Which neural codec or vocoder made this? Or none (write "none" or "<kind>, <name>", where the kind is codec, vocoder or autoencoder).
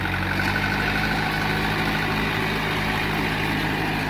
none